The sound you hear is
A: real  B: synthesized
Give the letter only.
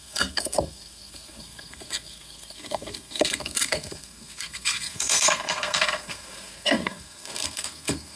B